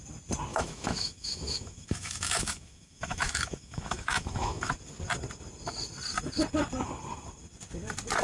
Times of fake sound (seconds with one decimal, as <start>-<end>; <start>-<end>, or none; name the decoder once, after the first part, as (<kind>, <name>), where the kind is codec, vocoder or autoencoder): 0.5-4.7 (autoencoder, DAC-VAE)